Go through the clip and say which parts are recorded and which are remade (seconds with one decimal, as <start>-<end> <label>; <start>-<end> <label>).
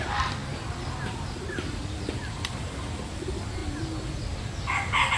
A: 0.0-5.2 recorded